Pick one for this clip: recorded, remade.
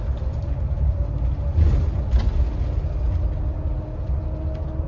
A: recorded